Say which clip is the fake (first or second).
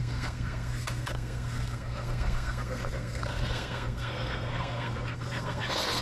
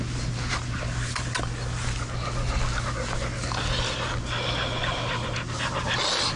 first